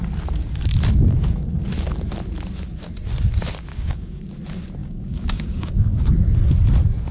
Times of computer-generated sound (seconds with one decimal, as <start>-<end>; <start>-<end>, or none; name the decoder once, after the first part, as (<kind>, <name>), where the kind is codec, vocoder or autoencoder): 3.7-4.2 (codec, DAC); 4.8-6.0

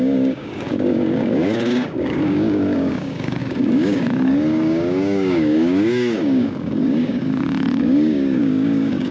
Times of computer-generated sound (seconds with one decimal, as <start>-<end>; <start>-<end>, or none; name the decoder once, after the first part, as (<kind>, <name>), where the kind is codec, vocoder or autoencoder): 0.0-9.1 (codec, DAC)

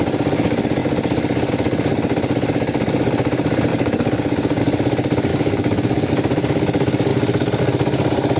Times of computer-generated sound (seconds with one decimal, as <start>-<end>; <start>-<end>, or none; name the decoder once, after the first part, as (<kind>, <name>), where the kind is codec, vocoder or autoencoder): 3.7-4.6 (codec, DAC); 5.3-6.1

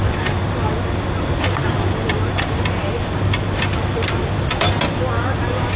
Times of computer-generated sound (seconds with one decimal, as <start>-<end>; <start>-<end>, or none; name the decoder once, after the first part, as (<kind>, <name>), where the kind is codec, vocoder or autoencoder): none

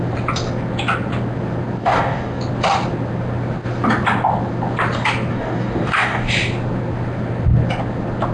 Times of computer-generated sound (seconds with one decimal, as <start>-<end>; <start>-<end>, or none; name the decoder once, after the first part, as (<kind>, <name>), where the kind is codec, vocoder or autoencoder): 1.8-2.4 (codec, DAC); 5.3-6.3

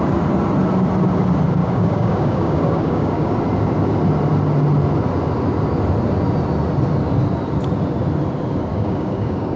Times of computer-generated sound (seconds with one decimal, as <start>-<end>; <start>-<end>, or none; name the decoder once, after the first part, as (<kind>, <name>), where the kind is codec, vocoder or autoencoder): 1.6-3.3 (codec, DAC); 8.7-9.6

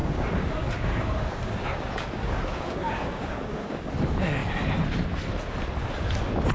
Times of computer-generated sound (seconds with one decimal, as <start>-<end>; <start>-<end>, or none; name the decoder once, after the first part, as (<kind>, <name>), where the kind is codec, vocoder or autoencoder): 0.0-3.9 (codec, DAC)

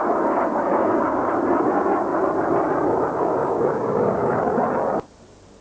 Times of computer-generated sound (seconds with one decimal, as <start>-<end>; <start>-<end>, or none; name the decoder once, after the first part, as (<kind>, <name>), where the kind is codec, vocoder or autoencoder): 0.7-1.3 (codec, DAC); 3.4-4.4